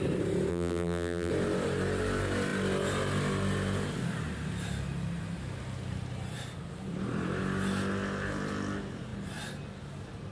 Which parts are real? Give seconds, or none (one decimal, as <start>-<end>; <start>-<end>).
0.0-0.5; 1.3-10.3